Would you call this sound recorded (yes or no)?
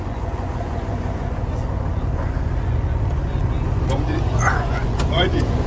no